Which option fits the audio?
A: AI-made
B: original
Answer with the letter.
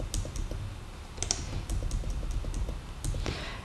B